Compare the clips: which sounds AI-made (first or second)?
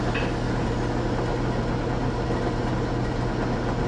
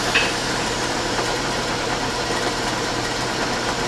second